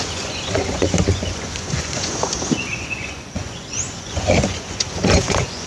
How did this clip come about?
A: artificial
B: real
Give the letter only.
A